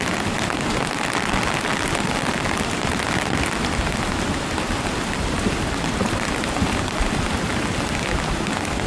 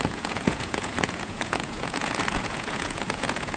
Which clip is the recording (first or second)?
first